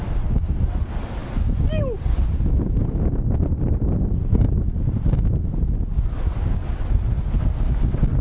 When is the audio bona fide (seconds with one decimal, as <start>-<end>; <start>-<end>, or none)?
0.0-8.2